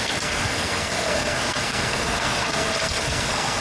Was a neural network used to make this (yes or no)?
yes